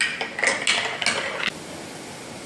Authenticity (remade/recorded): recorded